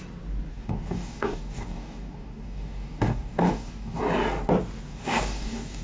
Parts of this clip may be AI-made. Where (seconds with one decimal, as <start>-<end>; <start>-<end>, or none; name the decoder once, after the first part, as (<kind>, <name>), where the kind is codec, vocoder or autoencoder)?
0.5-4.0 (codec, DAC); 4.9-5.8